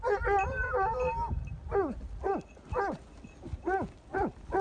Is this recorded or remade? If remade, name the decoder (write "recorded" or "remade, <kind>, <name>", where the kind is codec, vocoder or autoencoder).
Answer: recorded